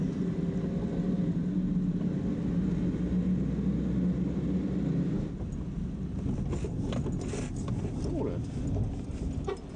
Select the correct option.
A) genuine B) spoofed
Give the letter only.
A